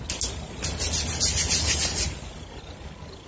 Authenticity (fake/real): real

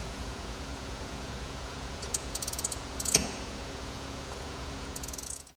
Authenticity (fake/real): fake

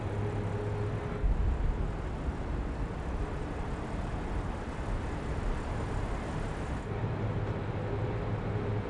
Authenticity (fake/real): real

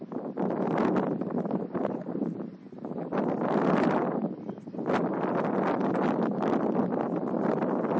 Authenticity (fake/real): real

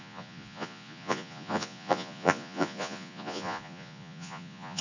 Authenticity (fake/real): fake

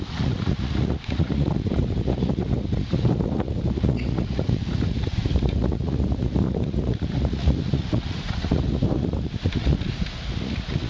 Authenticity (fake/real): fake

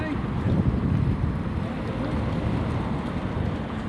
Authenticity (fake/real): real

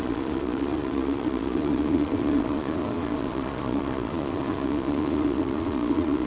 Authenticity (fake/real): fake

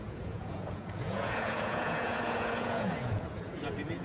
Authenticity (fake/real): fake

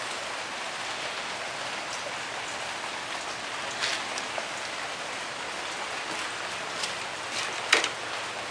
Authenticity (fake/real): real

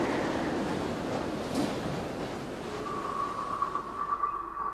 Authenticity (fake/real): real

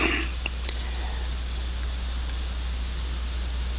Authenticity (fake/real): real